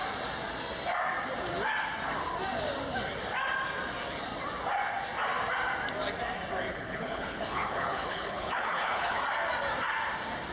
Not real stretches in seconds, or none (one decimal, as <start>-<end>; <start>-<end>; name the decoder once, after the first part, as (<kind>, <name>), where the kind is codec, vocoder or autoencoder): 6.7-9.2 (codec, HILCodec)